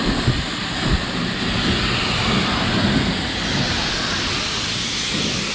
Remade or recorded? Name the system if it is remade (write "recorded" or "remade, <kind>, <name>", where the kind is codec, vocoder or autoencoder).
recorded